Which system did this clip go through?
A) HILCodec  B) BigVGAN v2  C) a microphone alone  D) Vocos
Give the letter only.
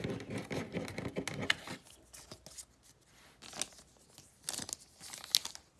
C